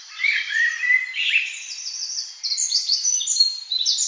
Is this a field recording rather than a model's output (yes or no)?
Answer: no